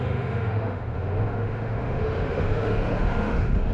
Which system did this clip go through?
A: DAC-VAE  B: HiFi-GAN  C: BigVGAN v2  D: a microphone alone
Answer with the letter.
A